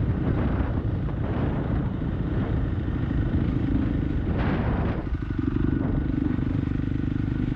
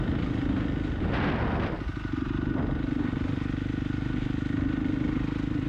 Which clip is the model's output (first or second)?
first